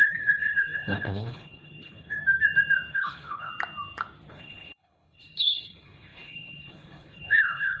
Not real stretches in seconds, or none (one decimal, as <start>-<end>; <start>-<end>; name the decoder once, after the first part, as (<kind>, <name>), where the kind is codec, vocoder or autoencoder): 0.0-2.2 (codec, HILCodec); 2.9-3.5; 4.3-7.8